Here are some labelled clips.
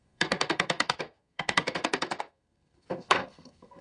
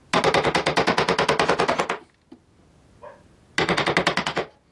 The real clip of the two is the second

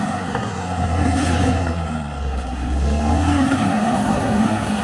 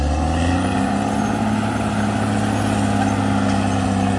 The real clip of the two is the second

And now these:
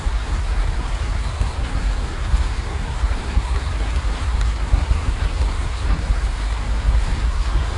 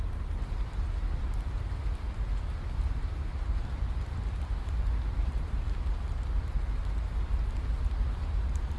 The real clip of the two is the second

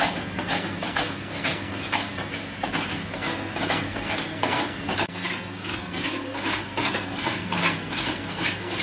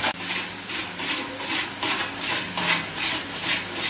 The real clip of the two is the second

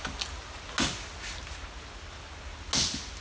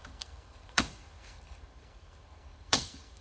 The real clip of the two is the first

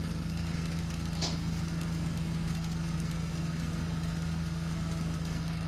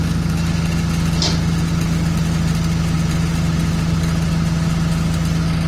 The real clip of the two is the second